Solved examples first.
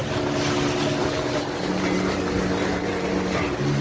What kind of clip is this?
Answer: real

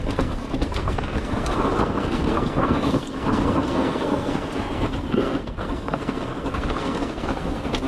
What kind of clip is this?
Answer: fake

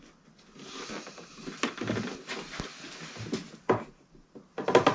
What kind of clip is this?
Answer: real